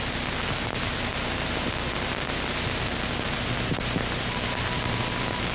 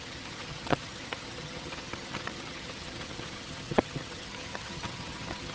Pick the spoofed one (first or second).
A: second